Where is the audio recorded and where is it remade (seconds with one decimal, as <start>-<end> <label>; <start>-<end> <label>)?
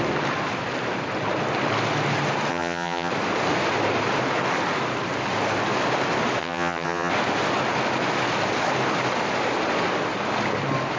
0.0-2.5 recorded; 2.5-3.1 remade; 3.1-6.4 recorded; 6.4-7.1 remade; 7.1-11.0 recorded